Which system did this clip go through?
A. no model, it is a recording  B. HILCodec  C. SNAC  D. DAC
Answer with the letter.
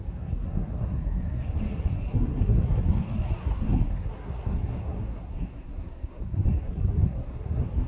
C